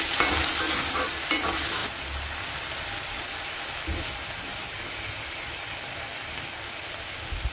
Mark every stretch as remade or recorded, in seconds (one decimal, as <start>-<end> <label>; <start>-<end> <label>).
0.0-7.5 recorded